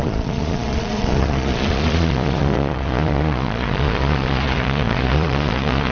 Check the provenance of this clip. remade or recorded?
remade